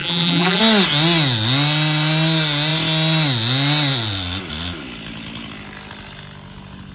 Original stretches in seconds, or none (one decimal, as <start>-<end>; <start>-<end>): 0.6-6.9